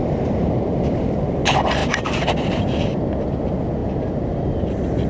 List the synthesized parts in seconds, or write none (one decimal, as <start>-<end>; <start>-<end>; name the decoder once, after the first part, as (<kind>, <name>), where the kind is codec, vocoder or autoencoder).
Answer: none

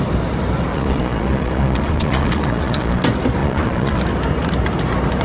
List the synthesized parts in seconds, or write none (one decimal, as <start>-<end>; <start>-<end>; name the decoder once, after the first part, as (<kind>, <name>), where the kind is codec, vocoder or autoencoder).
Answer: 0.7-3.0 (vocoder, Vocos); 3.4-4.0

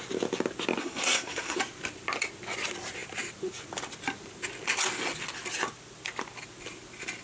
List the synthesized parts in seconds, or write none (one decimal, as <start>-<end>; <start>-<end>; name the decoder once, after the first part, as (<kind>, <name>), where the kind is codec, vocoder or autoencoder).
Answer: 0.8-1.6 (codec, SNAC)

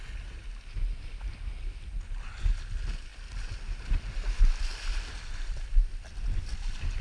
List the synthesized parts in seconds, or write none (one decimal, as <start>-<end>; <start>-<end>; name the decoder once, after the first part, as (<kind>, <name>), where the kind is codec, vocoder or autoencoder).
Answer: none

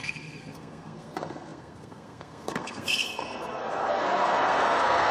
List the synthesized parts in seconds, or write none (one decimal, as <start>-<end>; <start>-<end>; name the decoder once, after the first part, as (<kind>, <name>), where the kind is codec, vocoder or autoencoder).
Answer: 0.0-5.1 (codec, SNAC)